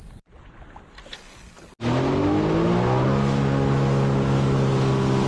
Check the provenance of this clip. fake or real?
real